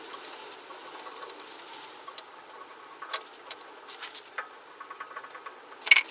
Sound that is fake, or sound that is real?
real